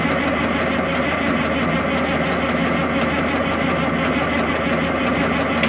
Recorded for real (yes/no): yes